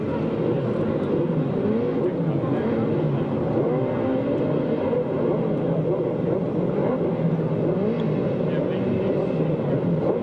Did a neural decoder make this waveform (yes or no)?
no